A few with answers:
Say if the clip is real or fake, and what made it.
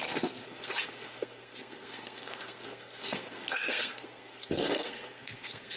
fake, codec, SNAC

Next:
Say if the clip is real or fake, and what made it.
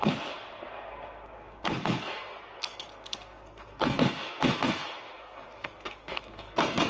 fake, codec, SNAC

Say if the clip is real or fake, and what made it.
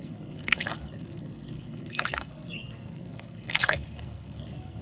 fake, codec, SNAC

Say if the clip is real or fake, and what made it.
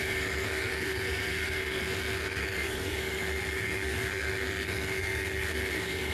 fake, codec, SNAC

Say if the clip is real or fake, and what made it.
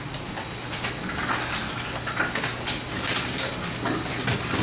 real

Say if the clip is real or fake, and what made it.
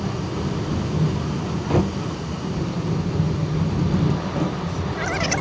real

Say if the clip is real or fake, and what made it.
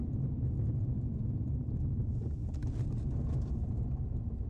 real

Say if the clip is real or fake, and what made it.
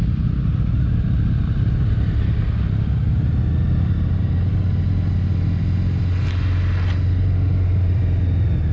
real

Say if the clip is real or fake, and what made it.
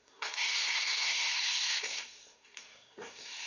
fake, codec, SNAC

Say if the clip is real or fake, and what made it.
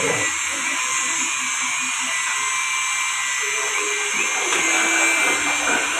real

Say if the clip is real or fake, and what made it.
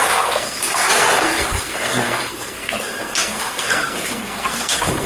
fake, codec, SNAC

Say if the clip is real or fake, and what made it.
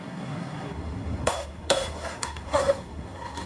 fake, codec, SNAC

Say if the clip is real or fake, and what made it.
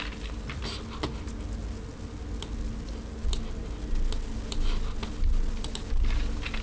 real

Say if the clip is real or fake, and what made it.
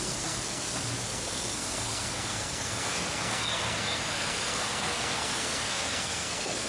fake, codec, SNAC